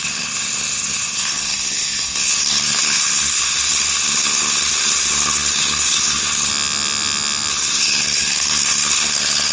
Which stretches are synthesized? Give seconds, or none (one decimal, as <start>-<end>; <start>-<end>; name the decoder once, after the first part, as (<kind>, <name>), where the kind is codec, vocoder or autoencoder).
0.0-6.5 (codec, SNAC); 7.5-9.5